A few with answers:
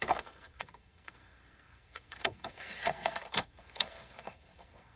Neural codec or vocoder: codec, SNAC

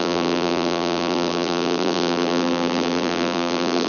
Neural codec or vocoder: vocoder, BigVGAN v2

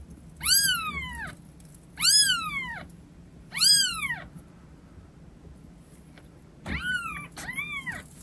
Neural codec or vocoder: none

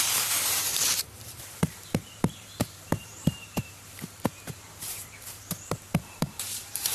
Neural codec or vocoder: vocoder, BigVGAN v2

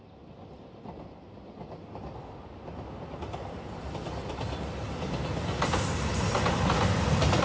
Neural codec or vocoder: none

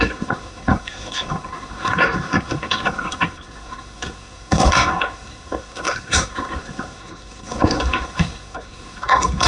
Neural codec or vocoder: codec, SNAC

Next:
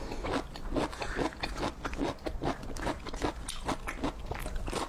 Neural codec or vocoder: none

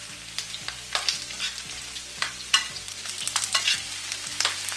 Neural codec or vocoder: none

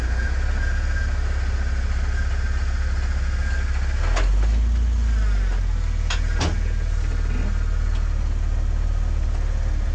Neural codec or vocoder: none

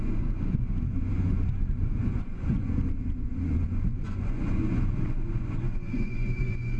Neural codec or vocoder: vocoder, Vocos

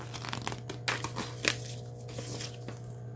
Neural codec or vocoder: none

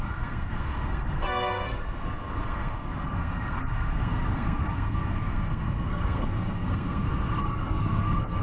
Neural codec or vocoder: codec, SNAC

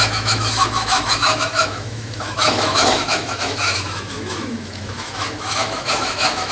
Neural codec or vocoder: autoencoder, DAC-VAE